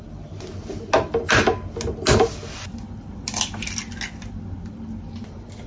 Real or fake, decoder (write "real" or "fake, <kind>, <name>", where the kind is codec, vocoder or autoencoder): real